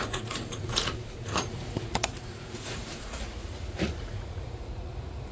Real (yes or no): no